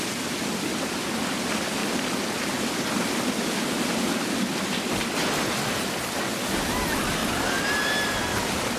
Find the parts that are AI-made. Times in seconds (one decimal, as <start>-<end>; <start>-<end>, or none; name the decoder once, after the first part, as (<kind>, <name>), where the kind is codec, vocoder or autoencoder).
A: none